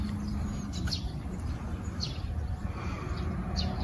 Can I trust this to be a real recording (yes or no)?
yes